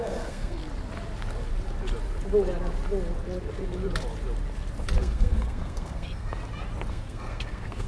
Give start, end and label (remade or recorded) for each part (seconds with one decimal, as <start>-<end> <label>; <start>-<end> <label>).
0.0-0.6 remade; 0.6-5.0 recorded; 5.0-6.4 remade; 6.4-6.9 recorded; 6.9-7.9 remade